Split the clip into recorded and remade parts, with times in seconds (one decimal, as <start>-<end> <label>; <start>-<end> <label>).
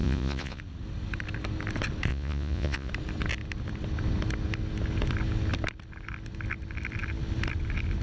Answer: 0.0-0.6 remade; 0.6-2.1 recorded; 2.1-2.9 remade; 2.9-8.0 recorded